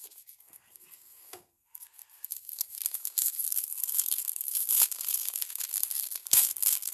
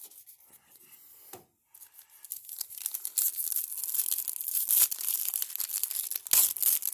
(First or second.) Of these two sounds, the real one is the second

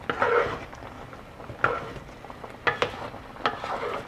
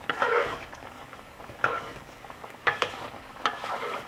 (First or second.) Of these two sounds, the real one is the first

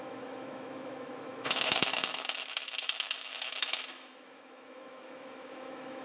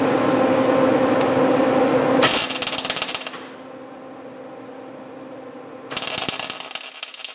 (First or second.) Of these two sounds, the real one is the second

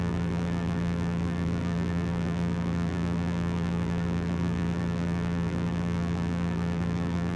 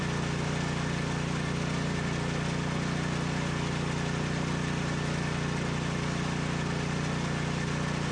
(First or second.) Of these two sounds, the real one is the second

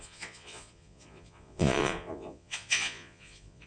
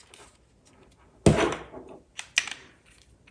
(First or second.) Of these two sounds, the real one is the second